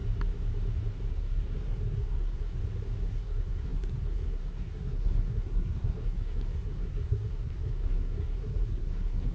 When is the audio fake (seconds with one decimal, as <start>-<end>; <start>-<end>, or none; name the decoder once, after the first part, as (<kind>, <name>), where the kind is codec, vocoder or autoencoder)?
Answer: 1.1-2.6 (codec, SNAC); 3.1-9.3